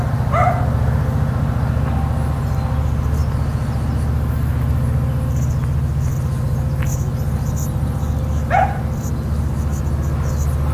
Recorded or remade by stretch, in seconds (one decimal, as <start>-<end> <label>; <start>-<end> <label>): 0.0-10.7 recorded